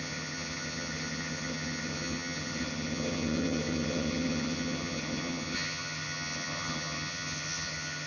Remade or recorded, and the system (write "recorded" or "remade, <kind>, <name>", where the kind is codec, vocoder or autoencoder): remade, vocoder, HiFi-GAN